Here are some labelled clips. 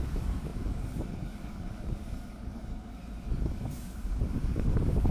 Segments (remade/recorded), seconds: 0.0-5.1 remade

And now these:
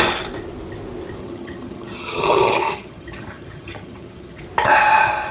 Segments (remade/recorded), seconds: 0.0-1.2 recorded; 1.2-4.4 remade; 4.4-5.3 recorded

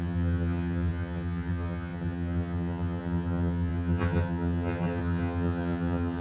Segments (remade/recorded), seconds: 0.0-6.2 remade

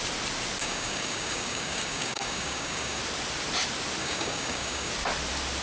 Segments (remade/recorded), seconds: 0.0-0.6 recorded; 0.6-3.0 remade; 3.0-4.0 recorded; 4.0-4.9 remade; 4.9-5.6 recorded

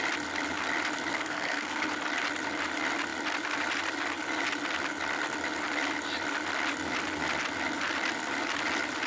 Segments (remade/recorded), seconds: 0.0-1.1 recorded; 1.1-1.9 remade; 1.9-9.1 recorded

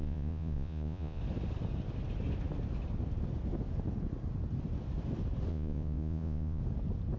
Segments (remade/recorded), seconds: 0.0-1.2 remade; 1.2-5.5 recorded; 5.5-6.6 remade; 6.6-7.2 recorded

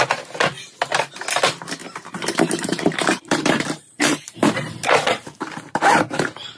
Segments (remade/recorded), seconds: 0.0-1.8 recorded; 1.8-5.8 remade; 5.8-6.6 recorded